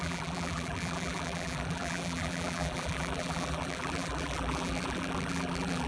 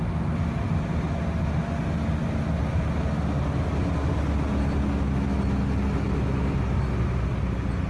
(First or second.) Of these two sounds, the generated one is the first